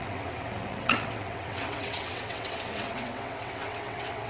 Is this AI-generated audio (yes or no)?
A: yes